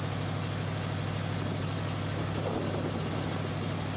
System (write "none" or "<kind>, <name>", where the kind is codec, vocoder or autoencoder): none